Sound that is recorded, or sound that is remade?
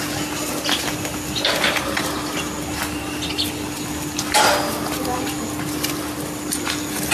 recorded